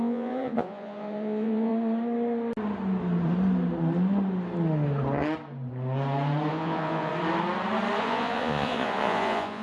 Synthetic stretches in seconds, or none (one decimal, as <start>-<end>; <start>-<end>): 0.0-1.7; 6.5-7.1; 8.0-9.6

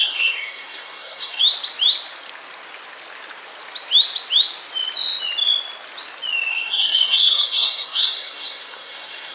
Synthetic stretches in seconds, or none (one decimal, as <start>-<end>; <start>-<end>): 0.0-1.4; 6.5-9.3

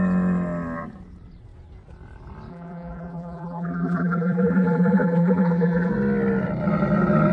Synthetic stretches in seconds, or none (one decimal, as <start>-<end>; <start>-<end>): 2.5-5.9

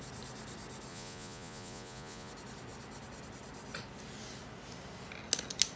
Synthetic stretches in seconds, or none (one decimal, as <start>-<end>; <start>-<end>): 0.9-2.3

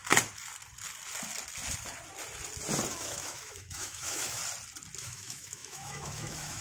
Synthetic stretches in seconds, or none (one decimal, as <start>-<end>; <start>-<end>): 2.9-4.4; 5.0-6.6

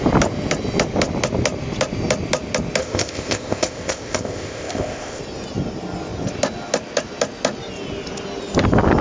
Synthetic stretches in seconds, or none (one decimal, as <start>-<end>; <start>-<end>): 2.8-5.2

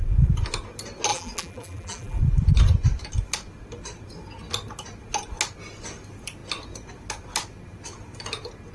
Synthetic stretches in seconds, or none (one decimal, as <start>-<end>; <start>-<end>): 1.1-2.2